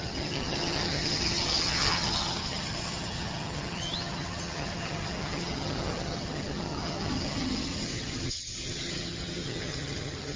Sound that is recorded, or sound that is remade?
remade